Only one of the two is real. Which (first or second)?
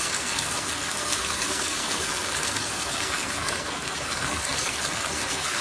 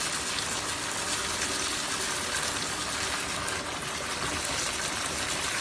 second